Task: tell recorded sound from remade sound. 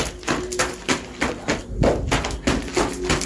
recorded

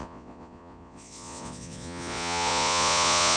remade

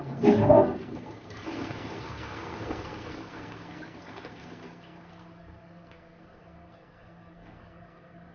remade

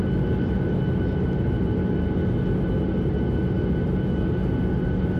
recorded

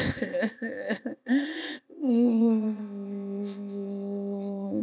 remade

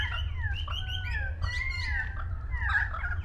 recorded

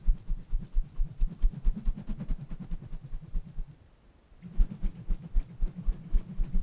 recorded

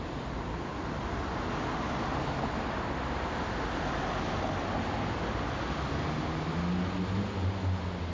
recorded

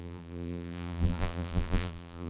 remade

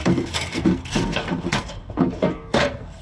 remade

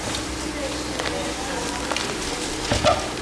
recorded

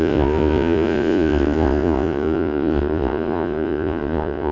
remade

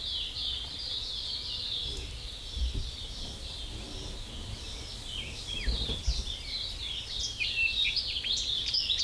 recorded